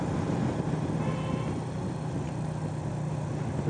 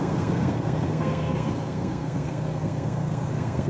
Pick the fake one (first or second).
second